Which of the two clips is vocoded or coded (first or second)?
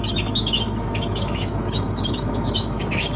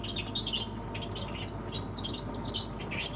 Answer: first